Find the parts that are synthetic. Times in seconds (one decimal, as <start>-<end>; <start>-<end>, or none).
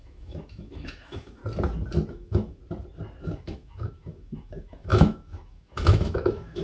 0.0-1.4; 2.1-2.6; 3.2-6.6